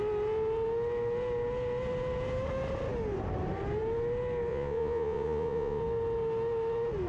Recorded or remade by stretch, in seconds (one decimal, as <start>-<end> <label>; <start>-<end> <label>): 0.0-4.5 recorded; 4.5-5.8 remade; 5.8-7.1 recorded